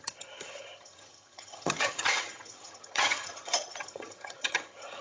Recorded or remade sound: remade